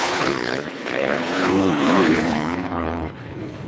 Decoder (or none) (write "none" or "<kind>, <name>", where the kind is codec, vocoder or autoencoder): codec, HILCodec